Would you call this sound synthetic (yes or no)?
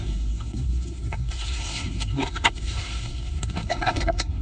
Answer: yes